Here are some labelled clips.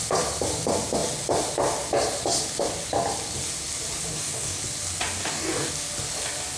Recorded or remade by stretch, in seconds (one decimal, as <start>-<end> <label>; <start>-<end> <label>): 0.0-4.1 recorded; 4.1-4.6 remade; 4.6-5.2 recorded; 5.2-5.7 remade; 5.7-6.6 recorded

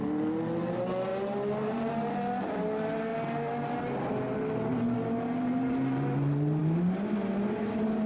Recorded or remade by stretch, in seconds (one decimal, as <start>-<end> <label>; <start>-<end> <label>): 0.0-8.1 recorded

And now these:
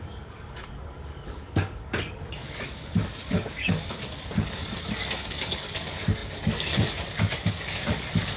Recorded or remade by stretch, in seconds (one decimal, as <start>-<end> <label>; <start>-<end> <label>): 0.0-8.4 remade

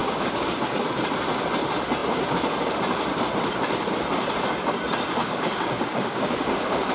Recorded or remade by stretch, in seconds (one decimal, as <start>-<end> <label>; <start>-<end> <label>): 0.0-0.6 remade; 0.6-5.2 recorded; 5.2-6.9 remade